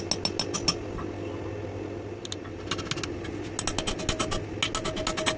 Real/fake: real